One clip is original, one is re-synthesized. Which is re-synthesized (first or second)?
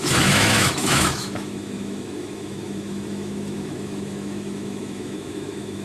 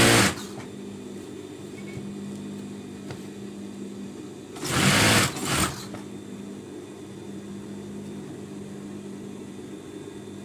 first